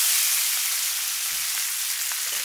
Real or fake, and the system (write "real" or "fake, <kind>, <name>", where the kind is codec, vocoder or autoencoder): real